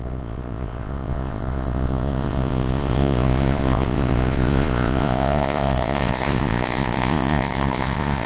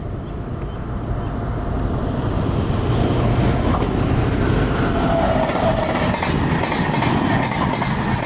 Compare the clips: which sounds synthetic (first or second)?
first